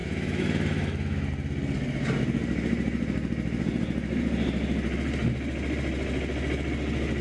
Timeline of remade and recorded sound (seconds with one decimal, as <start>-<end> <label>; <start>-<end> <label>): 0.0-1.3 remade; 1.3-7.2 recorded

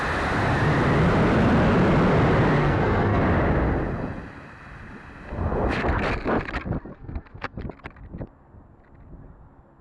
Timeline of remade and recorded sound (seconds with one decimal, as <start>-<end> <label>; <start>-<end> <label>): 0.0-2.6 recorded; 2.6-3.2 remade; 3.2-6.9 recorded; 6.9-7.6 remade; 7.6-9.8 recorded